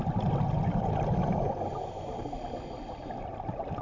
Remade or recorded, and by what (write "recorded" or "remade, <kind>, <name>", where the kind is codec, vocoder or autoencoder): recorded